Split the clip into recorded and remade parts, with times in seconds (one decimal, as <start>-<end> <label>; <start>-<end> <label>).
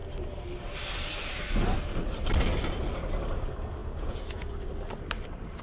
0.0-3.8 recorded; 3.8-4.5 remade; 4.5-5.6 recorded